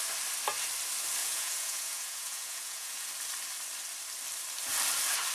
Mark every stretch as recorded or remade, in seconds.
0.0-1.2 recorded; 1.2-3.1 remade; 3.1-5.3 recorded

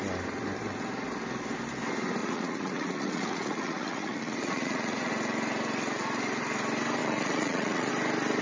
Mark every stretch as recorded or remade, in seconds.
0.0-2.2 recorded; 2.2-5.1 remade; 5.1-7.0 recorded; 7.0-7.9 remade; 7.9-8.4 recorded

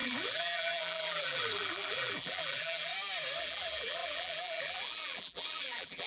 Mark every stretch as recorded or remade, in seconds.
0.0-2.9 remade; 2.9-3.4 recorded; 3.4-6.1 remade

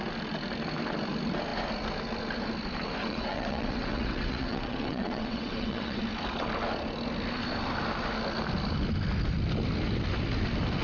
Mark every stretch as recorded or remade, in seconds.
0.0-3.0 recorded; 3.0-6.0 remade; 6.0-10.8 recorded

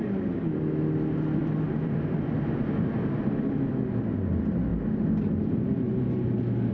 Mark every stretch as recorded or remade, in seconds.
0.0-1.4 recorded; 1.4-3.7 remade; 3.7-6.7 recorded

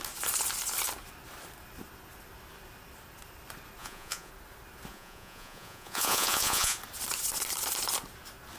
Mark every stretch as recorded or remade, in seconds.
0.0-3.8 recorded; 3.8-4.3 remade; 4.3-4.9 recorded; 4.9-6.8 remade; 6.8-8.6 recorded

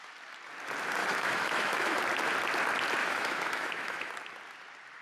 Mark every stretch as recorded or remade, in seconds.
0.0-1.0 recorded; 1.0-2.0 remade; 2.0-3.0 recorded; 3.0-4.1 remade; 4.1-5.0 recorded

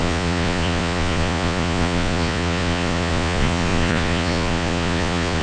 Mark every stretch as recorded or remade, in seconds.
0.0-5.4 remade